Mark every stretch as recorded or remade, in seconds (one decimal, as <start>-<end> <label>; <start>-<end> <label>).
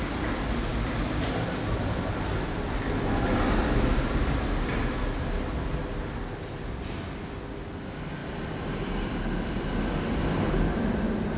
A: 0.0-11.4 recorded